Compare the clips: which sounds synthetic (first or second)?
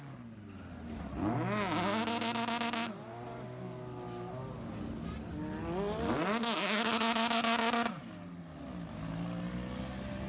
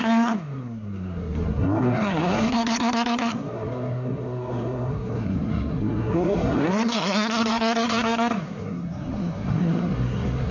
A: second